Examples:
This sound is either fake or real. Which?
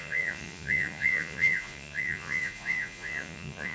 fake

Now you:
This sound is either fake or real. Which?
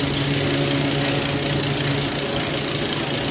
real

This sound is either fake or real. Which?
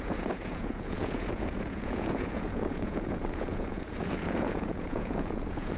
fake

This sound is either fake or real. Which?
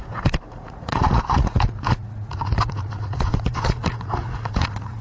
fake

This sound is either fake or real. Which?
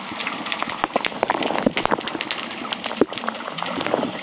real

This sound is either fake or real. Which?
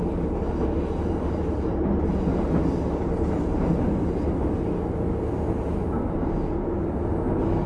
real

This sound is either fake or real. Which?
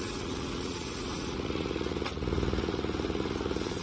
fake